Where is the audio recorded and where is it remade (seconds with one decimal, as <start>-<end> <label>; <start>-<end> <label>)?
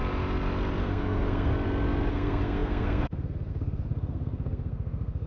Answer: 0.0-0.8 recorded; 0.8-1.5 remade; 1.5-2.1 recorded; 2.1-5.3 remade